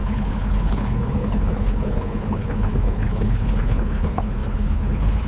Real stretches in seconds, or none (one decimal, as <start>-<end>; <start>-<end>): none

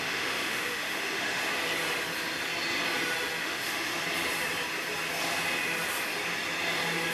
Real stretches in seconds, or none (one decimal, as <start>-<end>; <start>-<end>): 1.5-3.4; 3.9-7.1

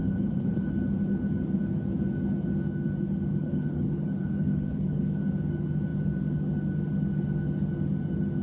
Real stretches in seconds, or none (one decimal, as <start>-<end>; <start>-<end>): 0.7-3.3; 5.2-8.4

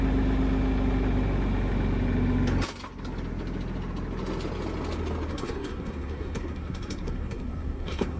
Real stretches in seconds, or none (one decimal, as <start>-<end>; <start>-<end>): 0.0-5.3

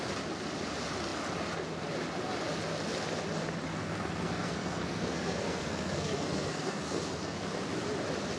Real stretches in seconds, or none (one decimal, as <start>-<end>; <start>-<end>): 0.0-3.8; 7.6-8.4

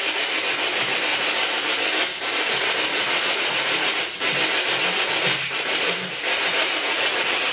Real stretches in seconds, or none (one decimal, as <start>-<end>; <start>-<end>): 0.0-2.9; 4.0-6.6

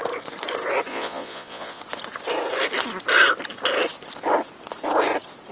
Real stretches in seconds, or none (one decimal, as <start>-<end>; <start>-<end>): 0.0-0.9; 1.8-5.5

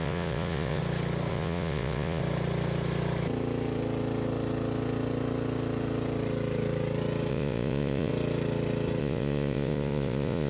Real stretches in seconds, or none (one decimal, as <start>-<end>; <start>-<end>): 0.8-1.3; 2.2-7.3; 8.1-9.0